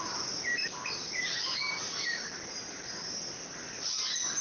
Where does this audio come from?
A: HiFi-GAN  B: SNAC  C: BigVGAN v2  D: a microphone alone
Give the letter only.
D